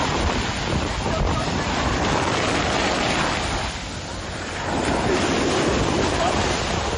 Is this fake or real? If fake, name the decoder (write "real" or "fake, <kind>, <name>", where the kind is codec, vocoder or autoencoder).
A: fake, vocoder, BigVGAN v2